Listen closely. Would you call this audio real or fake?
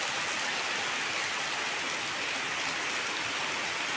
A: real